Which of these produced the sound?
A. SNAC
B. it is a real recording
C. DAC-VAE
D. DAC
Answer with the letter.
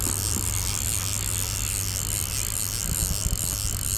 B